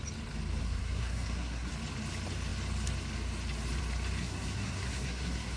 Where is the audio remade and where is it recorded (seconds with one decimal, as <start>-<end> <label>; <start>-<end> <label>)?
0.0-0.6 recorded; 0.6-1.7 remade; 1.7-4.2 recorded; 4.2-5.6 remade